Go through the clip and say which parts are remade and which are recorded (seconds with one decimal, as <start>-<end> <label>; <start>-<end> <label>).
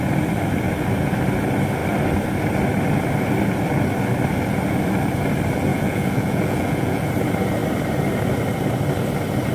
0.0-5.7 recorded; 5.7-7.1 remade; 7.1-9.5 recorded